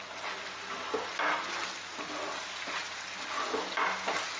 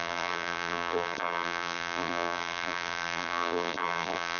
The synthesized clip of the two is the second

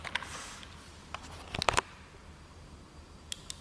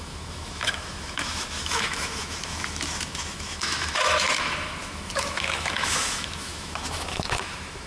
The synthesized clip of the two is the second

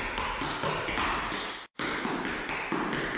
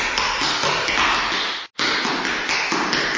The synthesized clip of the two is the first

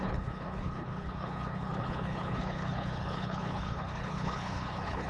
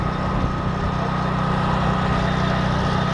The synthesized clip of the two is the first